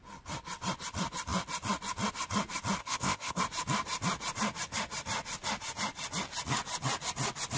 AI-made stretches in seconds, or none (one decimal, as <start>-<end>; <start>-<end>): 2.8-3.4